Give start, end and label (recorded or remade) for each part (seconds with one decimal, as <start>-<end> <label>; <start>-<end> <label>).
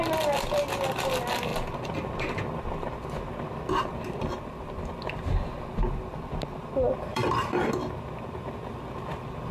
0.0-7.1 recorded; 7.1-7.7 remade; 7.7-9.5 recorded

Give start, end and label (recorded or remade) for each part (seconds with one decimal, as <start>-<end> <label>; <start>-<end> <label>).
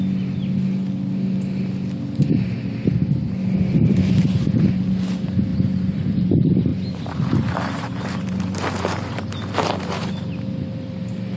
0.0-5.5 recorded; 5.5-6.3 remade; 6.3-6.7 recorded; 6.7-10.1 remade; 10.1-11.4 recorded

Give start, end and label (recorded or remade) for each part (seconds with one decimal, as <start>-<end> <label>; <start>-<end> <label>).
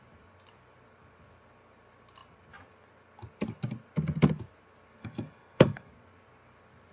0.0-5.0 recorded; 5.0-5.9 remade; 5.9-6.9 recorded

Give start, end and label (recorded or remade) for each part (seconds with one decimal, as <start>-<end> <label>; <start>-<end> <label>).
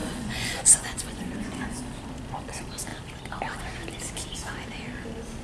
0.0-1.8 remade; 1.8-5.4 recorded